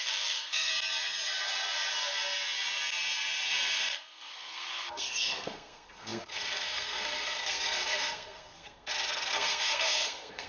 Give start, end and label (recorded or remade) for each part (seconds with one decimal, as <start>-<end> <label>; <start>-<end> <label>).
0.0-0.7 remade; 0.7-3.9 recorded; 3.9-10.5 remade

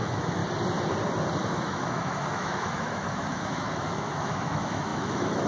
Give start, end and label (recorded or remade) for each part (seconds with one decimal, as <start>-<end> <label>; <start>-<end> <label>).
0.0-0.4 remade; 0.4-1.4 recorded; 1.4-5.5 remade